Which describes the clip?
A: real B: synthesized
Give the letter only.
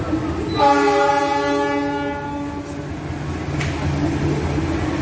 A